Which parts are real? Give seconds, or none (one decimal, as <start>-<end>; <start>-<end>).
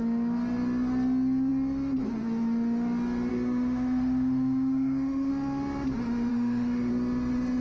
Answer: 0.0-3.3; 5.3-6.3; 6.9-7.6